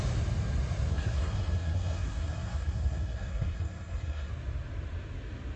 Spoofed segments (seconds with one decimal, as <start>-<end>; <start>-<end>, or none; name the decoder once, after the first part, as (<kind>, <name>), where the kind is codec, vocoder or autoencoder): 0.9-4.3 (codec, SNAC)